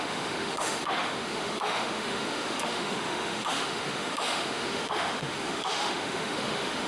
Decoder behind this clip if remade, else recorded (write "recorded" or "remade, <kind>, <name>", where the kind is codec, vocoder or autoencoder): remade, autoencoder, DAC-VAE